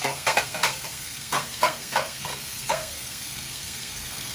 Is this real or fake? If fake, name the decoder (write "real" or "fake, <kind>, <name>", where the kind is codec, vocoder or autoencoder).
fake, codec, SNAC